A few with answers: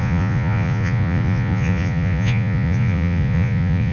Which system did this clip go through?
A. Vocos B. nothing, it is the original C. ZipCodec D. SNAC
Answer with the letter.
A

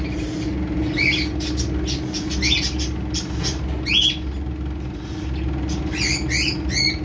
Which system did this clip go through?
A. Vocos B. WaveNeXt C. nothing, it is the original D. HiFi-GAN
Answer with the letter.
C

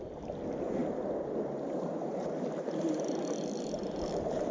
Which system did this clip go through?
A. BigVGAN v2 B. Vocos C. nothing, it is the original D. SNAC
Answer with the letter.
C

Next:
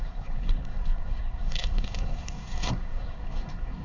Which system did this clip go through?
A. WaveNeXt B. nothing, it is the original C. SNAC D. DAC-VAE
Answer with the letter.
C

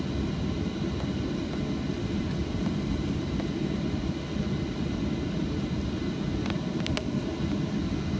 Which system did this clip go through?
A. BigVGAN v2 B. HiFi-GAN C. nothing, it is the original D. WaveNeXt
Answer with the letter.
C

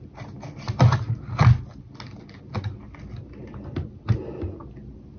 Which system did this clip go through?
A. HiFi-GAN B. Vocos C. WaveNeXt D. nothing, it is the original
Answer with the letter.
D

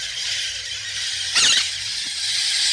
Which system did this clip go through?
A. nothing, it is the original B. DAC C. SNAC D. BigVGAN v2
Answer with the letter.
A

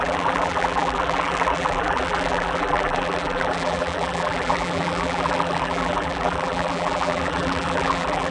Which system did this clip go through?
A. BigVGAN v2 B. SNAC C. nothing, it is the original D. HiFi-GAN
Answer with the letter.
A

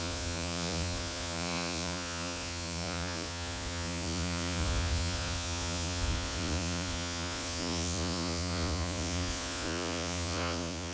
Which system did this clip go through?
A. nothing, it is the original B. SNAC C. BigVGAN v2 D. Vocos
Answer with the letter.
D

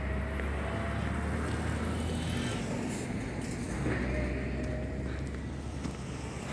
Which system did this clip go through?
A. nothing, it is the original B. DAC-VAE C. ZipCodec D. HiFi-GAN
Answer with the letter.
A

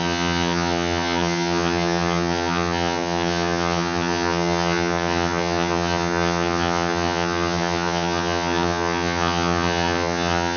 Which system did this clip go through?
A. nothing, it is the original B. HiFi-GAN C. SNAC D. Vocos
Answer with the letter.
B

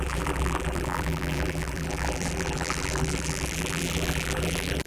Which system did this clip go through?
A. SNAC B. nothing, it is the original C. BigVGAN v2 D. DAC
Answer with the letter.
C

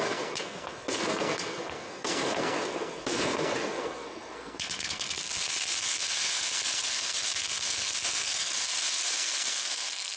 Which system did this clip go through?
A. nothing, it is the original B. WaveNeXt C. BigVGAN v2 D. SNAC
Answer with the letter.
D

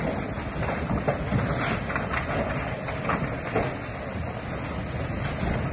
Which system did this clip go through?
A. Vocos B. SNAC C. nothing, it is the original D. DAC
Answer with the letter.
C